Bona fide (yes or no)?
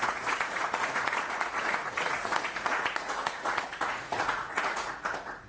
no